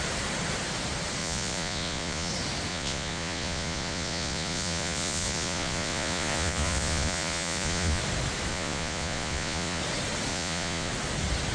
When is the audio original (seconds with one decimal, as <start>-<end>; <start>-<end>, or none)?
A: 0.0-1.2; 2.3-2.7; 8.0-8.5; 9.8-10.3; 10.9-11.5